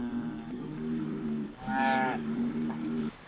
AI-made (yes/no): yes